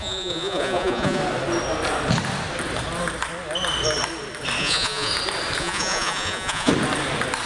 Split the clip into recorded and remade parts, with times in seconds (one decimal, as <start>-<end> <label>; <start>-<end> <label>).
0.0-1.2 remade; 1.2-4.6 recorded; 4.6-5.1 remade; 5.1-5.6 recorded; 5.6-6.7 remade; 6.7-7.5 recorded